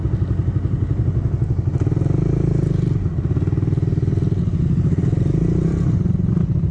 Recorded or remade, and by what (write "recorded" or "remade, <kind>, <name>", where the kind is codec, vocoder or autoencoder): recorded